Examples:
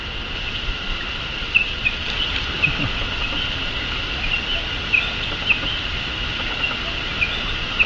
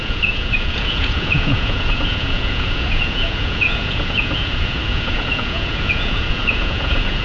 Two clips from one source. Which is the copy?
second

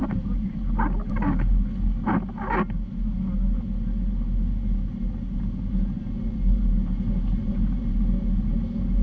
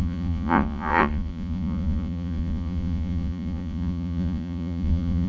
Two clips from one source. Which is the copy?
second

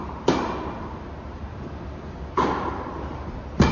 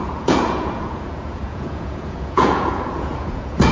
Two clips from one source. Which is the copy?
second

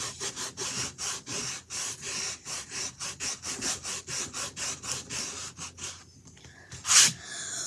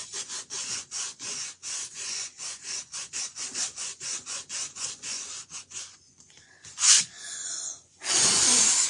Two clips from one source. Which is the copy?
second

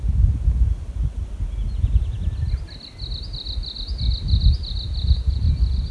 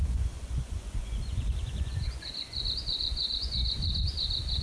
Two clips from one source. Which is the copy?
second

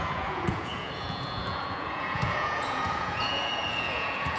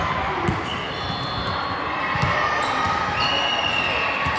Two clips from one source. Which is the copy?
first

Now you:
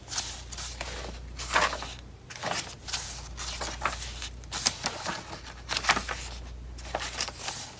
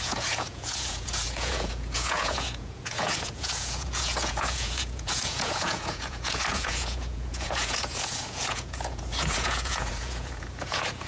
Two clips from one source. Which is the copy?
second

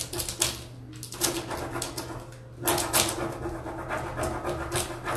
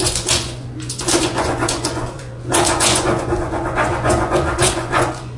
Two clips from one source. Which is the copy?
second